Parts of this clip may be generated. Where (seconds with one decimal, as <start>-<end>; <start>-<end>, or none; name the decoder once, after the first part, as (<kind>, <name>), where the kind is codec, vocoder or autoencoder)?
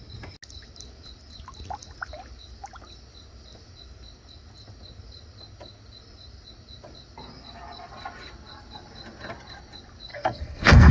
10.1-10.9 (codec, SNAC)